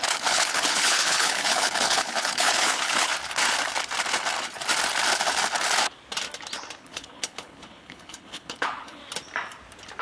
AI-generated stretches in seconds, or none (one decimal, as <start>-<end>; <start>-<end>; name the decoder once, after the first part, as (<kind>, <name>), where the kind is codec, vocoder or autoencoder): 0.0-3.1 (codec, HILCodec); 6.8-9.0